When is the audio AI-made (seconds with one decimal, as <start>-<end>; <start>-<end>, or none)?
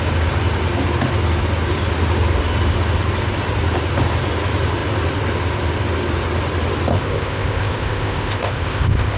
6.9-9.2